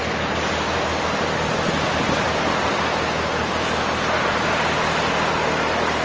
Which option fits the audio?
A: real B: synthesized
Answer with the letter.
A